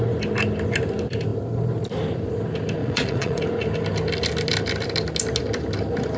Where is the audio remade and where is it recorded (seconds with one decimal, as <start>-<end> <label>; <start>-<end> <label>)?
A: 0.0-2.8 recorded; 2.8-3.4 remade; 3.4-6.2 recorded